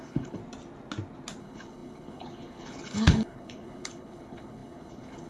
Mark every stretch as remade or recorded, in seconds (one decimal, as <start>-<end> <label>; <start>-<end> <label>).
0.0-0.4 remade; 0.4-1.4 recorded; 1.4-5.3 remade